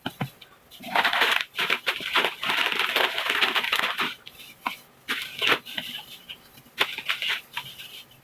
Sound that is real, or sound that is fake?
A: real